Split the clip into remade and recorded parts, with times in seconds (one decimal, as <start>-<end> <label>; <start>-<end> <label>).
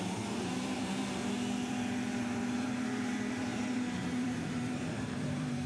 0.0-1.2 remade; 1.2-1.7 recorded; 1.7-5.7 remade